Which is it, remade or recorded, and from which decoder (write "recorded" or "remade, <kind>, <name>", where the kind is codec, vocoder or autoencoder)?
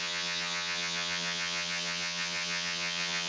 remade, vocoder, HiFi-GAN